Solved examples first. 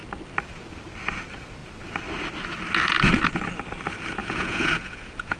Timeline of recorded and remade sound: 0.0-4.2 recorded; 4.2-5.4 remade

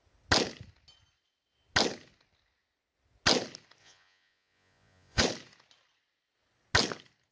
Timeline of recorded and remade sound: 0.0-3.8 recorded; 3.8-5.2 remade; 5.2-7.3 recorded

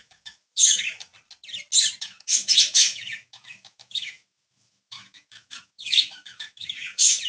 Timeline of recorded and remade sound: 0.0-1.1 remade; 1.1-2.0 recorded; 2.0-7.3 remade

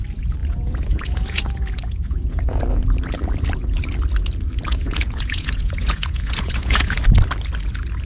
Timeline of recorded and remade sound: 0.0-0.4 recorded; 0.4-2.6 remade; 2.6-4.7 recorded; 4.7-7.0 remade; 7.0-8.1 recorded

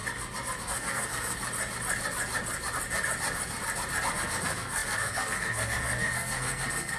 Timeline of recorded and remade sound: 0.0-0.6 recorded; 0.6-1.4 remade; 1.4-4.1 recorded; 4.1-7.0 remade

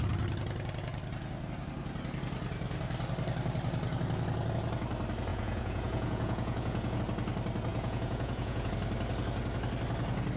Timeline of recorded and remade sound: 0.0-5.3 recorded; 5.3-7.0 remade; 7.0-7.7 recorded; 7.7-8.7 remade; 8.7-10.4 recorded